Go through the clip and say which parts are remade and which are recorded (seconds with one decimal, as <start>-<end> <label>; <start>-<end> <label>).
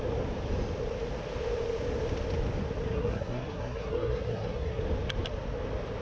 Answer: 0.0-2.9 recorded; 2.9-4.8 remade; 4.8-6.0 recorded